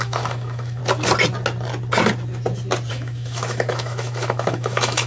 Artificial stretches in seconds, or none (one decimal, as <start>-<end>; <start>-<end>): 0.0-0.8; 2.9-5.1